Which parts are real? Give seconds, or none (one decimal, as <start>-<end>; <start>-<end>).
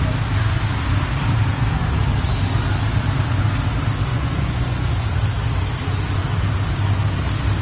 0.0-4.1; 5.1-7.6